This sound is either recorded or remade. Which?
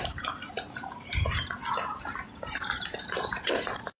remade